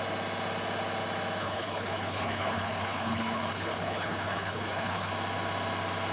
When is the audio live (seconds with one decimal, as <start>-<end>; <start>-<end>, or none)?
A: 0.0-1.4; 5.1-6.1